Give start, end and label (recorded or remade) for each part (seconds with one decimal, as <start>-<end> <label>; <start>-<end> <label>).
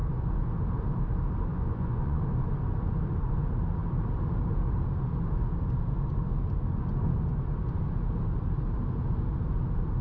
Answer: 0.0-1.5 recorded; 1.5-2.2 remade; 2.2-10.0 recorded